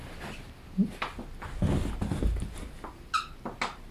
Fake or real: real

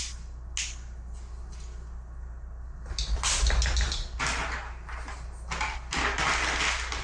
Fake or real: real